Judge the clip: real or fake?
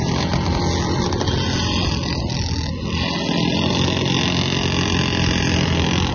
real